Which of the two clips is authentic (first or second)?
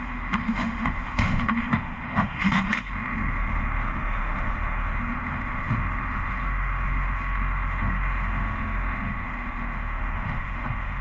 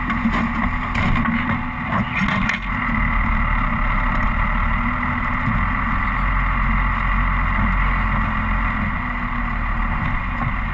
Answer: second